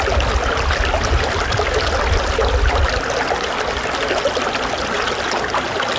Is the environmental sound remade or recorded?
recorded